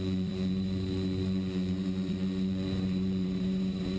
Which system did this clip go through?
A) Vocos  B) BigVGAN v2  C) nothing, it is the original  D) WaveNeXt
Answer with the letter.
A